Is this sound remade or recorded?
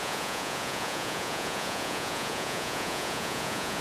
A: remade